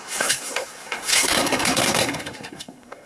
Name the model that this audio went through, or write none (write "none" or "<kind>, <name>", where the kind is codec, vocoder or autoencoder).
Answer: codec, SNAC